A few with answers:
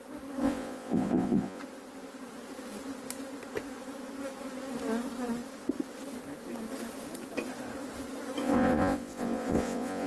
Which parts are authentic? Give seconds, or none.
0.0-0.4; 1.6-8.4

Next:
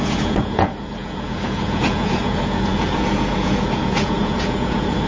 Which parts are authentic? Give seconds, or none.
none

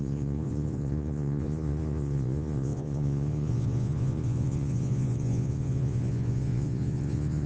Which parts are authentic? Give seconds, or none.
none